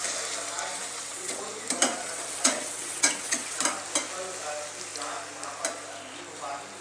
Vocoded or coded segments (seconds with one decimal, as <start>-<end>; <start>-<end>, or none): 0.7-1.4; 1.9-3.6